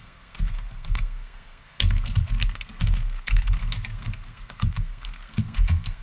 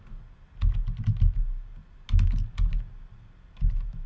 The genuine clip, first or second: second